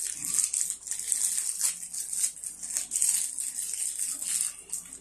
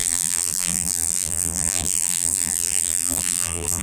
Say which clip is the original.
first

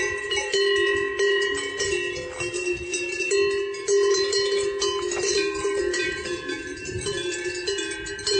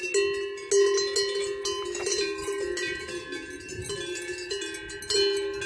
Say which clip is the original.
second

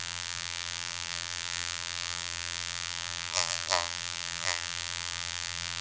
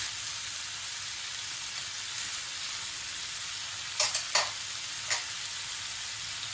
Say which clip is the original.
second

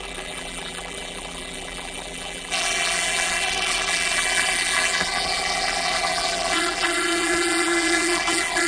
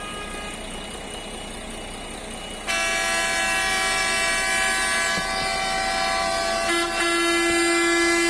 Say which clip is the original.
second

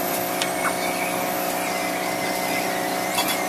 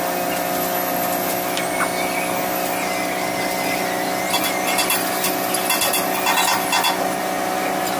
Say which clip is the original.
second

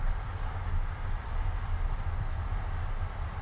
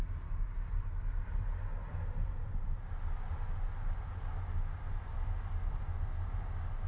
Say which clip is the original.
second